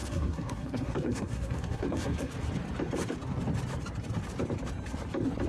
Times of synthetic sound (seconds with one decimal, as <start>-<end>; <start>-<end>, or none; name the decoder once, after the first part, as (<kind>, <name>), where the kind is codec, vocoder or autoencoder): 0.0-2.3 (codec, SNAC)